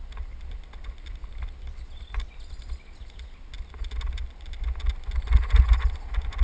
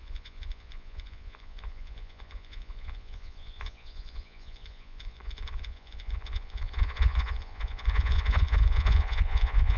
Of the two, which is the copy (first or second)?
second